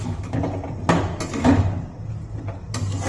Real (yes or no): yes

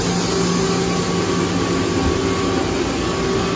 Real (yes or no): yes